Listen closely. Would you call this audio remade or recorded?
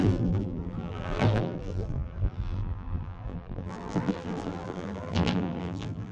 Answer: remade